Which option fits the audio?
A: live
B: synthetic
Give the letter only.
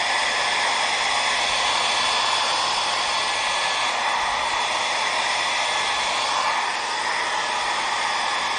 A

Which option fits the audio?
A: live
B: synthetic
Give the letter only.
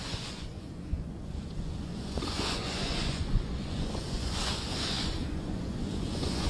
B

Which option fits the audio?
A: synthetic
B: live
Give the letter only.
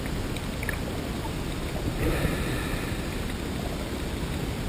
B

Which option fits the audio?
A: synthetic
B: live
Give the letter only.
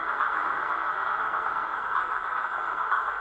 A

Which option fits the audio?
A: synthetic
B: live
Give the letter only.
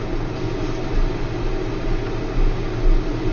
B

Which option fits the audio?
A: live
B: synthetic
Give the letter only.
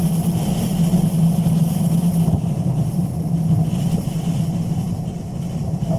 A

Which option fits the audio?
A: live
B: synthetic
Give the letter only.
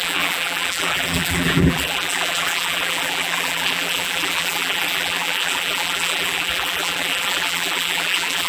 B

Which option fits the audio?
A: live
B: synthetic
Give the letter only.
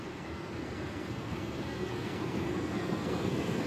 B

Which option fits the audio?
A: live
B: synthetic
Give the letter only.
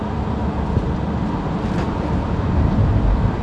A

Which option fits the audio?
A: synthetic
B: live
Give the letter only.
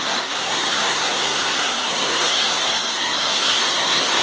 A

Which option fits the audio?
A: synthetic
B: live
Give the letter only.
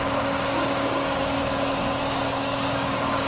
A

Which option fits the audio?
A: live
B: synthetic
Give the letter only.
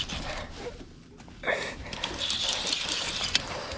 B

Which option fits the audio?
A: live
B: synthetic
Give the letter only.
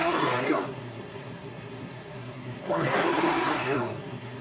B